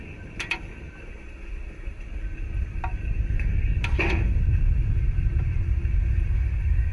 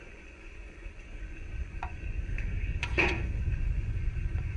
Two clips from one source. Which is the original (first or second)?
first